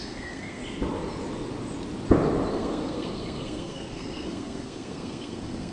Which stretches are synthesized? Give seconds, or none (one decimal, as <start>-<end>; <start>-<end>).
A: 0.0-0.6; 2.5-5.7